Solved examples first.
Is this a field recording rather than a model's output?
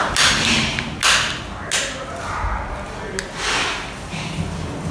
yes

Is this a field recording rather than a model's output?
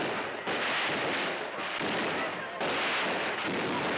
yes